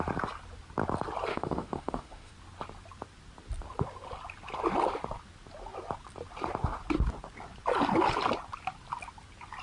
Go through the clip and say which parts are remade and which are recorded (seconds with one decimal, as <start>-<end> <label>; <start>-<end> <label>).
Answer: 0.0-1.3 recorded; 1.3-2.3 remade; 2.3-9.6 recorded